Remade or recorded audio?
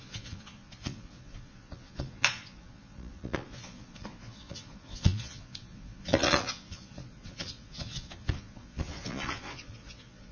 remade